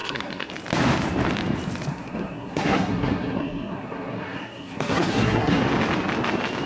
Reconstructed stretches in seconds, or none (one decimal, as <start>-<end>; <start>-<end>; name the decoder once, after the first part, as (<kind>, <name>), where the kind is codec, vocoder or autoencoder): 0.0-0.5 (codec, SNAC); 1.9-5.6